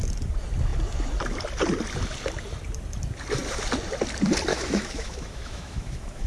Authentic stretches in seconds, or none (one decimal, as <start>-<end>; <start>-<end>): 0.0-4.5